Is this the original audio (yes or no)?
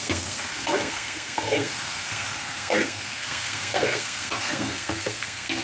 no